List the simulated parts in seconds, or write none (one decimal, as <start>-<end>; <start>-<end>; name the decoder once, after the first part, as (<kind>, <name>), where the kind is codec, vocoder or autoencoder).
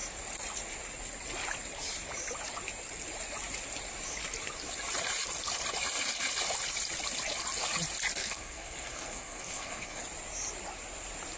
8.2-10.0 (codec, SNAC)